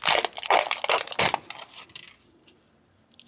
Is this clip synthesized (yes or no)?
no